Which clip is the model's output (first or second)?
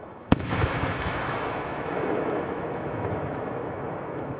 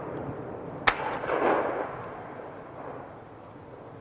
first